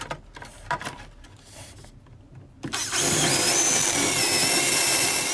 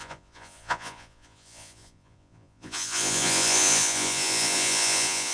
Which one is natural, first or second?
first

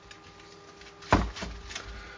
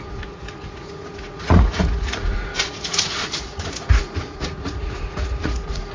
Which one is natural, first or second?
first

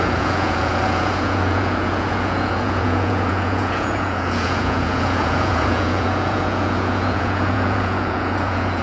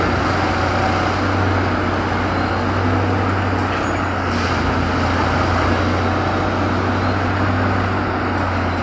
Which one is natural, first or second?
second